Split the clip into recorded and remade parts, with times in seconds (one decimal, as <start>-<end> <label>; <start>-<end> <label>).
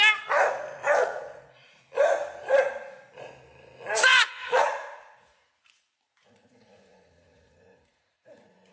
0.0-1.0 recorded; 1.0-1.8 remade; 1.8-4.1 recorded; 4.1-8.7 remade